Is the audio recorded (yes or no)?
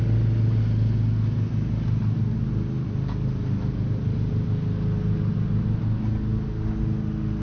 yes